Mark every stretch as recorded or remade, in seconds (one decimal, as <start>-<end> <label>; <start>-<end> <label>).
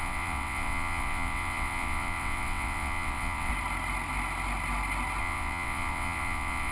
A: 0.0-3.5 remade; 3.5-5.2 recorded; 5.2-6.7 remade